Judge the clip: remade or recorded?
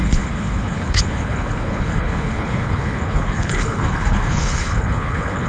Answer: remade